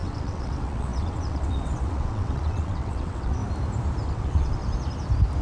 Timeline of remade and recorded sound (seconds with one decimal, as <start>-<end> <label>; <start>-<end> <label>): 0.0-3.4 remade; 3.4-4.0 recorded; 4.0-4.6 remade; 4.6-5.4 recorded